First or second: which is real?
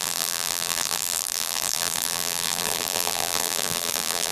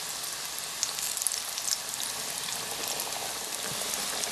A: second